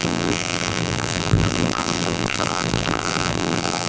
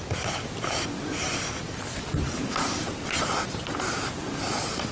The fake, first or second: first